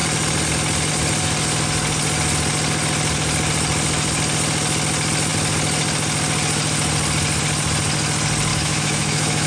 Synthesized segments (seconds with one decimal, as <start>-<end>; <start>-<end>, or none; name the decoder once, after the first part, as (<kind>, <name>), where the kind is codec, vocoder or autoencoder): 8.5-9.5 (autoencoder, DAC-VAE)